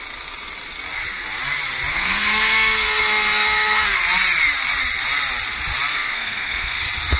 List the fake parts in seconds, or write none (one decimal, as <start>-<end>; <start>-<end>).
1.9-4.0; 5.9-6.8